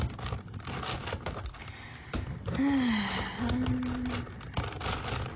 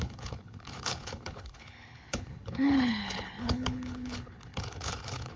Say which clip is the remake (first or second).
second